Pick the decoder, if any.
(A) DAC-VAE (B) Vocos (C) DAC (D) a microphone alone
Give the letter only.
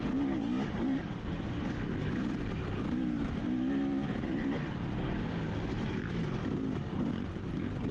D